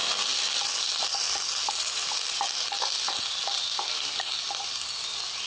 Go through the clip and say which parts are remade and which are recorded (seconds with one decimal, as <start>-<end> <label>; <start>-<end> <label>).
0.0-5.5 recorded